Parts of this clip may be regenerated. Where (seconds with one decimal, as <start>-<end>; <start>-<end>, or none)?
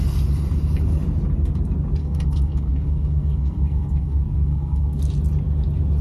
2.0-5.0